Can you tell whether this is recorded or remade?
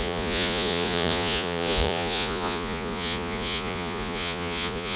remade